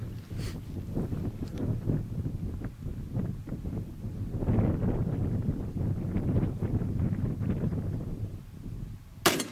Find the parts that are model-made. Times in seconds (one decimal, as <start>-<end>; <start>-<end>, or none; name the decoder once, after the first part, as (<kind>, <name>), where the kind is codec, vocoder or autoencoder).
none